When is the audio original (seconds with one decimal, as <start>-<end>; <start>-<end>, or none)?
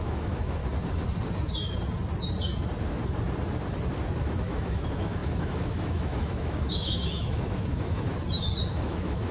0.6-4.2; 8.1-8.7